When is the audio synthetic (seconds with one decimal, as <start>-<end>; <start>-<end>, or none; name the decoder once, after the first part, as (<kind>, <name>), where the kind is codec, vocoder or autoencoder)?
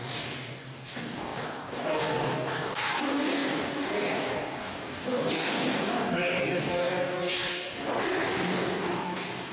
0.0-9.5 (codec, DAC)